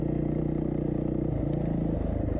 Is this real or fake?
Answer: real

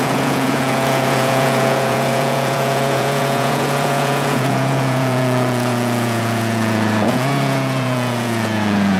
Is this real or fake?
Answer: fake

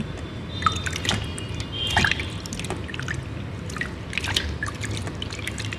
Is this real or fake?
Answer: real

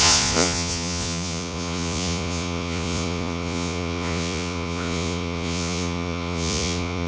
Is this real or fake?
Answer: fake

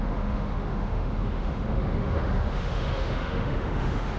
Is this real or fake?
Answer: fake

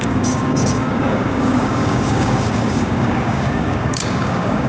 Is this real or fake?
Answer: fake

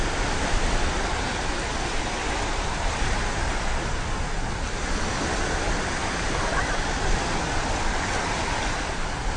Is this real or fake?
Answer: real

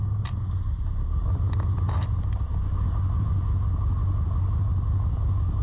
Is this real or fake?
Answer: real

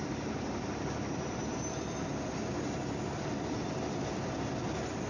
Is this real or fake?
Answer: fake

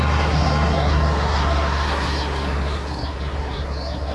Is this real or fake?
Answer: fake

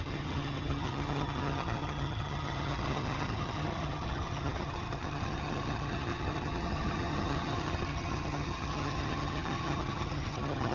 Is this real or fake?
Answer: fake